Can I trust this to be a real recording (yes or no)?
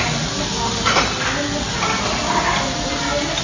yes